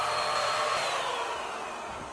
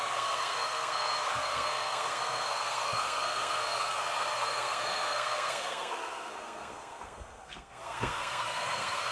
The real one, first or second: first